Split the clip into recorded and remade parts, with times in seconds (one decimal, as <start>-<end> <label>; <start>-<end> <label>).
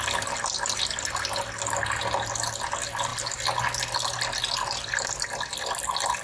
0.0-6.2 recorded